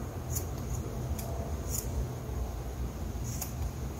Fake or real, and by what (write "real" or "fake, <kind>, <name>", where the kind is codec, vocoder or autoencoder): real